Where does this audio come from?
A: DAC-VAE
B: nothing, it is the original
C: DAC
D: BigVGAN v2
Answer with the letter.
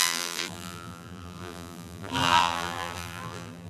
D